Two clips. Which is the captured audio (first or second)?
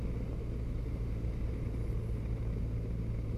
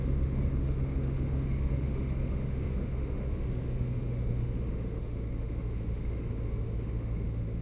first